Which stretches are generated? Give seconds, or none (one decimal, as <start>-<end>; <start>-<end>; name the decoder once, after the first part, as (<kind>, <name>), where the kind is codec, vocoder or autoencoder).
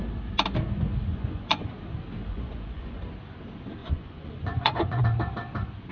1.1-1.7 (vocoder, Vocos); 2.3-3.0; 3.8-5.0